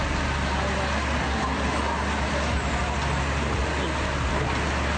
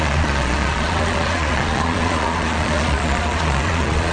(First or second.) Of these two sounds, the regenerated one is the second